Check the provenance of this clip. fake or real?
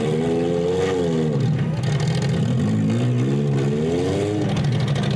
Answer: real